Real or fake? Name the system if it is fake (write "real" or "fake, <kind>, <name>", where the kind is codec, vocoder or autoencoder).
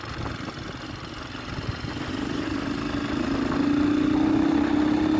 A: real